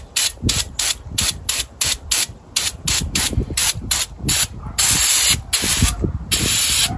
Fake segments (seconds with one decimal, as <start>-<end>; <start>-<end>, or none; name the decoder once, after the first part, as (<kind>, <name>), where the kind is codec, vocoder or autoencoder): none